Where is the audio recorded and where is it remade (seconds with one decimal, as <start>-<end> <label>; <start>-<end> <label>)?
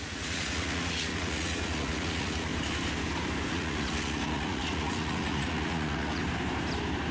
0.0-2.5 remade; 2.5-3.5 recorded; 3.5-6.2 remade; 6.2-7.1 recorded